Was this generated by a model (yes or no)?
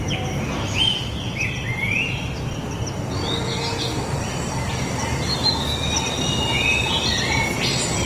no